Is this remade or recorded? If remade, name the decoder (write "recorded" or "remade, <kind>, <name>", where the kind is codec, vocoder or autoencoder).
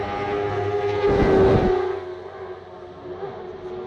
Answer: recorded